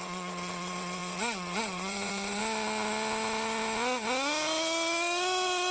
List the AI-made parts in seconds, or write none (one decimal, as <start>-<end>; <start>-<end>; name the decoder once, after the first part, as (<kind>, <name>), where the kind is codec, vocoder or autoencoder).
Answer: 0.0-2.4 (vocoder, WaveNeXt)